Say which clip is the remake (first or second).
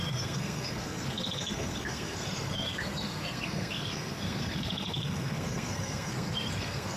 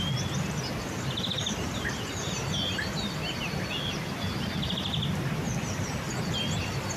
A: first